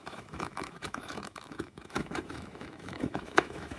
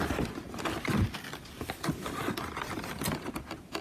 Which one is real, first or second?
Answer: second